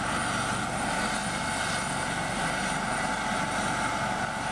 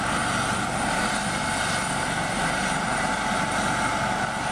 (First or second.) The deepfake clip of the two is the second